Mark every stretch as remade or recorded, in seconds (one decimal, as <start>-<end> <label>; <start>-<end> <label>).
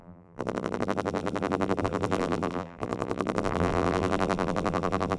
0.0-5.2 remade